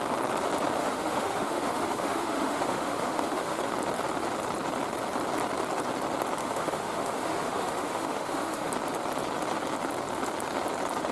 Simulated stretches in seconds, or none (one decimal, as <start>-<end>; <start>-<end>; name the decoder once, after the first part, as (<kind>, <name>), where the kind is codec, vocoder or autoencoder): 0.8-3.6 (autoencoder, DAC-VAE); 6.4-8.7